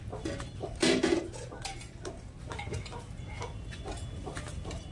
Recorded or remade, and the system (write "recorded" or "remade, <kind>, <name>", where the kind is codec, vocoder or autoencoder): recorded